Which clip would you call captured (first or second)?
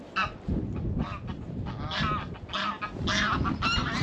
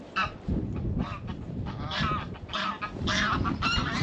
first